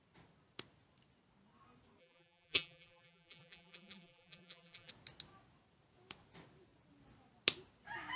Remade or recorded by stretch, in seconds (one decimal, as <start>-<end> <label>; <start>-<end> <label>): 0.0-2.0 recorded; 2.0-4.9 remade; 4.9-8.2 recorded